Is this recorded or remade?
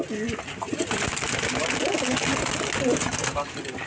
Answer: recorded